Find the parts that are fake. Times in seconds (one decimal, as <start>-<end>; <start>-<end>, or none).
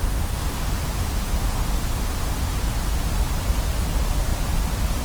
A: none